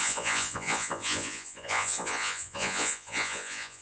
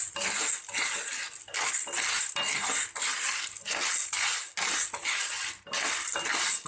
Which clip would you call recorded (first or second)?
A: second